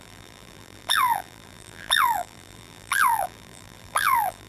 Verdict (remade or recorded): remade